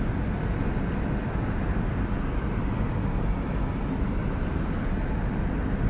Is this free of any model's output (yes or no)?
yes